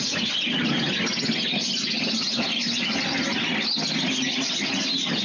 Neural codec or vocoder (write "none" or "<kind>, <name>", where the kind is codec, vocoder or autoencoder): none